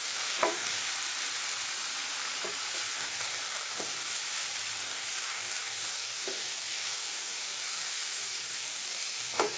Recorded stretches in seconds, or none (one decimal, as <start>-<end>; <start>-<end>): 0.9-3.0; 4.2-4.8